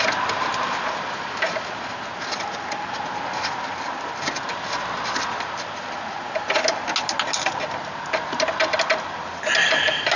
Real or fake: real